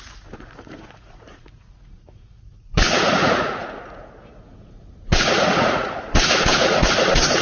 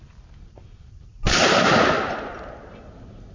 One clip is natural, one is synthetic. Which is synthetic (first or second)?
first